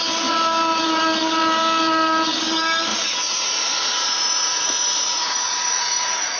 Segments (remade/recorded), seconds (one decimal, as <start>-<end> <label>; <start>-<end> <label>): 0.0-2.9 recorded; 2.9-6.4 remade